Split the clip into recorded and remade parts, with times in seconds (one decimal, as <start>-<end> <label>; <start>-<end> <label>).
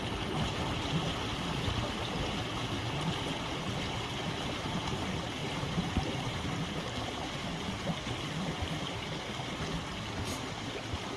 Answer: 0.0-5.4 recorded; 5.4-6.9 remade; 6.9-11.2 recorded